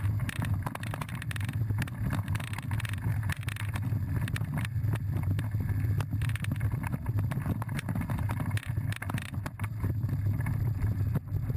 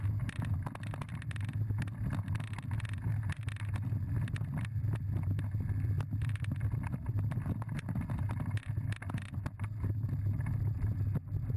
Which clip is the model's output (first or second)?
first